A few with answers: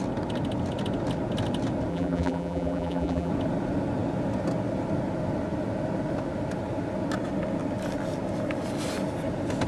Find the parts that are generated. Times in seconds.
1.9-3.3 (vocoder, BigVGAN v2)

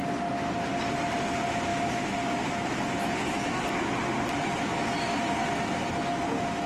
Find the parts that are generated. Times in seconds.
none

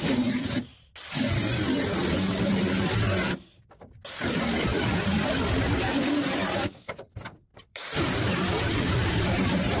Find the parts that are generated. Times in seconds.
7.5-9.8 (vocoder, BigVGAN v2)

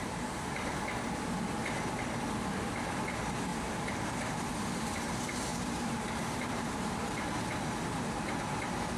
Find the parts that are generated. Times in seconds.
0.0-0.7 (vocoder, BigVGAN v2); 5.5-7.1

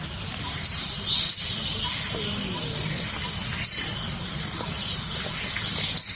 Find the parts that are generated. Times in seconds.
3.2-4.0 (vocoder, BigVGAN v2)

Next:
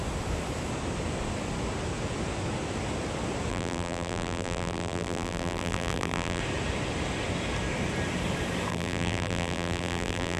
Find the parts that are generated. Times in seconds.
3.5-6.4 (vocoder, BigVGAN v2); 8.7-10.4

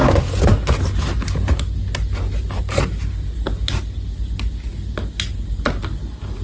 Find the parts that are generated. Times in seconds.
none

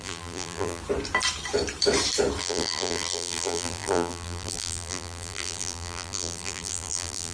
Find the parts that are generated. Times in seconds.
0.0-0.8 (vocoder, BigVGAN v2); 2.4-7.3